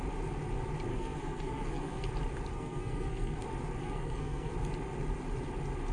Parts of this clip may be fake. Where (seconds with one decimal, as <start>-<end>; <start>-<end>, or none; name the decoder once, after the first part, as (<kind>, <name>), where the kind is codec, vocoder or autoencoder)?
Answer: 0.9-2.1 (codec, SNAC); 2.5-3.4; 3.8-4.5